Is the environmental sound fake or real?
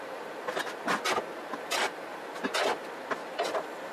real